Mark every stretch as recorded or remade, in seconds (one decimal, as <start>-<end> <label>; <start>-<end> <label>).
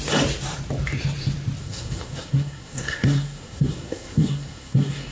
0.0-1.6 recorded; 1.6-5.1 remade